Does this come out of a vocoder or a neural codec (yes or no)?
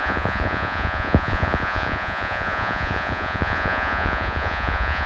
yes